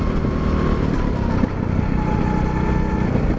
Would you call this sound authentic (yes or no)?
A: yes